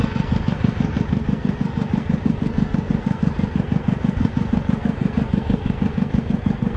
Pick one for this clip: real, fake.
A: fake